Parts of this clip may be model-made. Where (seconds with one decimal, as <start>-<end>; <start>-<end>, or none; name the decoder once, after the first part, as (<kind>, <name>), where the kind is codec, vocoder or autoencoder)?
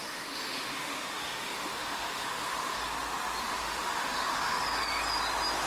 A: 0.0-2.8 (autoencoder, DAC-VAE); 3.4-4.6